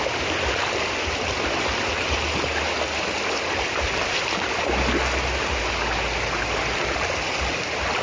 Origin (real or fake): real